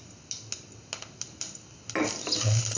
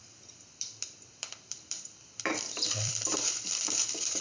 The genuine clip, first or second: first